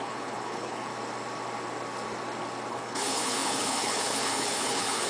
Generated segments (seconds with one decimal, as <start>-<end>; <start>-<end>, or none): 0.0-0.9; 2.7-5.1